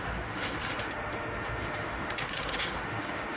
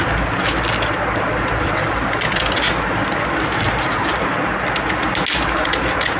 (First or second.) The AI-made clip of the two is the first